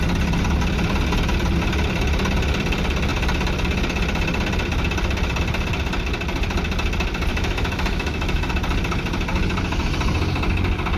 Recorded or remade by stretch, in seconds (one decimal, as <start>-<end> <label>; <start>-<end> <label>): 0.0-7.3 recorded; 7.3-8.5 remade; 8.5-11.0 recorded